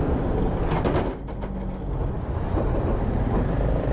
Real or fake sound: real